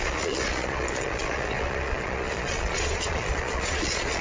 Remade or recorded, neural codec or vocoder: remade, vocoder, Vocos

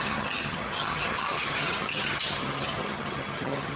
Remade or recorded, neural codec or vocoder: remade, vocoder, HiFi-GAN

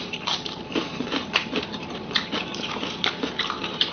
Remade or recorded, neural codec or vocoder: remade, vocoder, BigVGAN v2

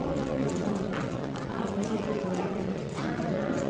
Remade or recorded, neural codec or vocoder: remade, vocoder, WaveNeXt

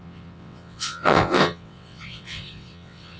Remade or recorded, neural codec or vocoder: remade, vocoder, WaveNeXt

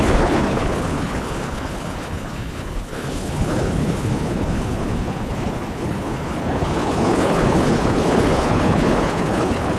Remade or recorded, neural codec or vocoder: remade, codec, HILCodec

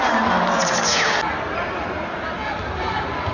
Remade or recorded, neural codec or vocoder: recorded